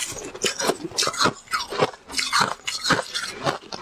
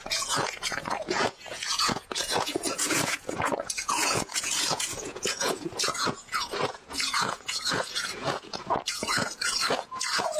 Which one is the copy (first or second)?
second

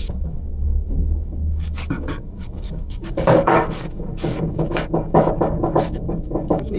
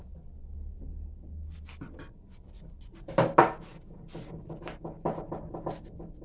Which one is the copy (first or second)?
first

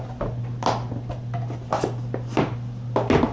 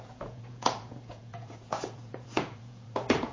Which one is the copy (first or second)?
second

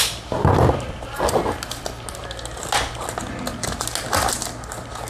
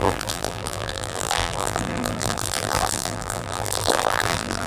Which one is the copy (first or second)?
second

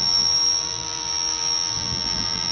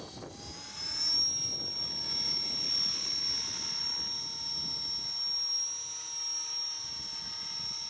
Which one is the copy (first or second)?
first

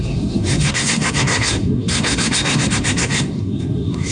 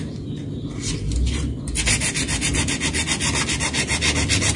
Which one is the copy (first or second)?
first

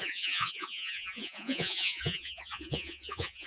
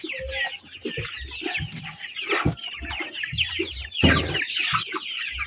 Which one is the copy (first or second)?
first